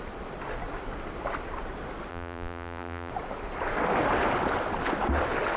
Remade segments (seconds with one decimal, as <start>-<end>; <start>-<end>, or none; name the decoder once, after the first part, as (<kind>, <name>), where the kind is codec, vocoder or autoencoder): 2.1-3.1 (vocoder, BigVGAN v2)